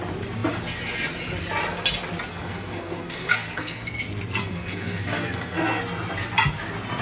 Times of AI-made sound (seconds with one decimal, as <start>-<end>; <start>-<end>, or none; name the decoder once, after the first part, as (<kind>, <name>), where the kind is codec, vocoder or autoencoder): 2.3-3.9 (codec, SNAC); 4.4-5.8